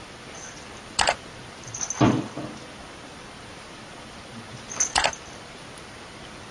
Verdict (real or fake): real